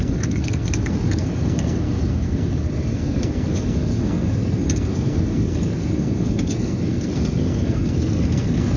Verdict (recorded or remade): remade